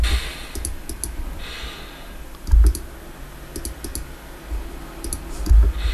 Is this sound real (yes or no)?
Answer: yes